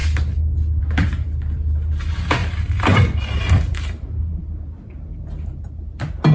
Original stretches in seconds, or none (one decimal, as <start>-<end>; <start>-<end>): 0.0-2.4; 4.4-6.3